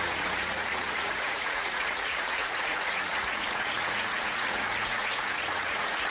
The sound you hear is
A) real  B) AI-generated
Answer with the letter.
B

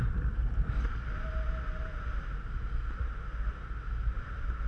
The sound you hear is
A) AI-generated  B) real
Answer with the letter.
B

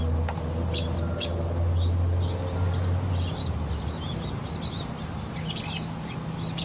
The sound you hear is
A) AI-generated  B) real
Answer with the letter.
B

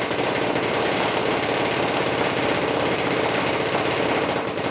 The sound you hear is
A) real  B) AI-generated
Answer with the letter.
A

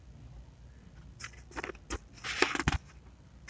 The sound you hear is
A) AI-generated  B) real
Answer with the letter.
B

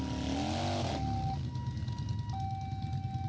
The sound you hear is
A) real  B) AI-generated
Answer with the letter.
A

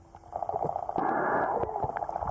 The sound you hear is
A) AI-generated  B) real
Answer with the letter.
B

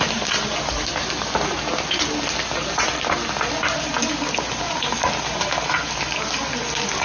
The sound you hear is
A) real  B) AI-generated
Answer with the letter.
A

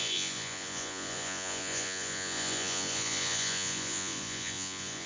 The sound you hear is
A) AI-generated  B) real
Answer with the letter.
A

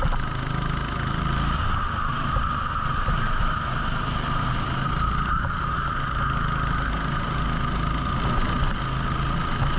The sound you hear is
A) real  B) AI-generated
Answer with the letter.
A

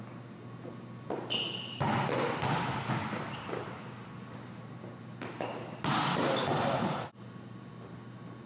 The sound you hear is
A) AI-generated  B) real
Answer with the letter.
B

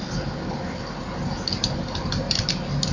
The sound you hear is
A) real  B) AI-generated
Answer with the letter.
A